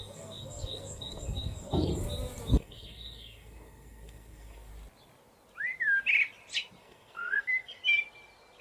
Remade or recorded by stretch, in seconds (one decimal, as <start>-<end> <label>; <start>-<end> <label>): 0.0-1.9 remade; 1.9-2.5 recorded; 2.5-4.7 remade; 4.7-6.8 recorded; 6.8-7.8 remade; 7.8-8.6 recorded